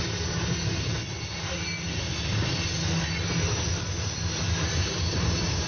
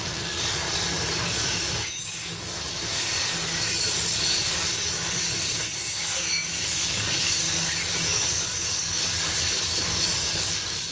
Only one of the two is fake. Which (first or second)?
second